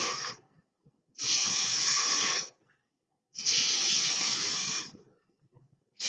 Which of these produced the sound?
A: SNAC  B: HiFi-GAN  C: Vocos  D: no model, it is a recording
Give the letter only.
A